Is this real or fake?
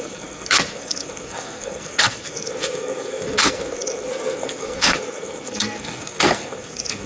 fake